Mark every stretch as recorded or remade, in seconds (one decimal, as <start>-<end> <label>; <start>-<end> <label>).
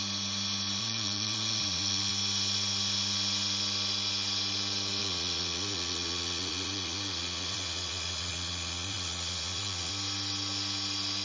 0.0-0.8 recorded; 0.8-2.1 remade; 2.1-5.0 recorded; 5.0-9.9 remade; 9.9-11.2 recorded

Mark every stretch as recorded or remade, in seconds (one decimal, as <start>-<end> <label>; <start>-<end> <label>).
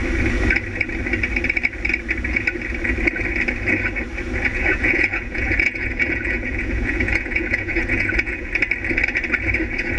0.0-4.5 recorded; 4.5-8.5 remade; 8.5-10.0 recorded